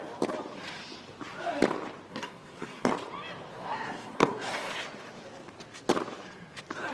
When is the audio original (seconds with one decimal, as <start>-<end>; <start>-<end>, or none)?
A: 0.0-2.1; 2.9-3.5; 4.7-6.9